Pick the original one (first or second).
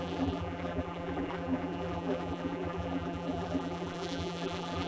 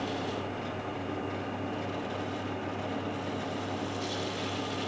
second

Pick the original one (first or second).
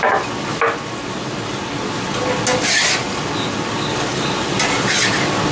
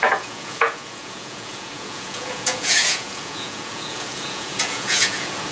first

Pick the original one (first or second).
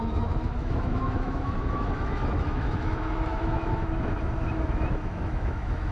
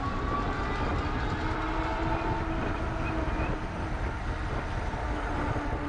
second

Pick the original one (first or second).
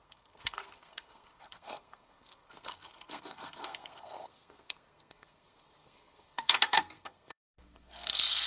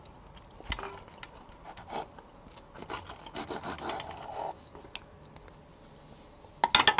second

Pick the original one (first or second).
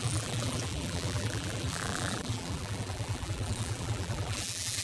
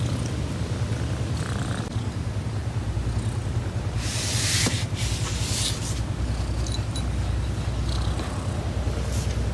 second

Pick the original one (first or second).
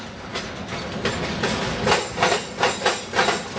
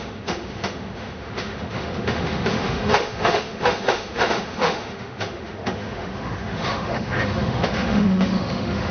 first